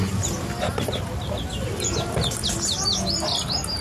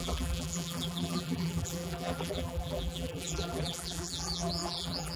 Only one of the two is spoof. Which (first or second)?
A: second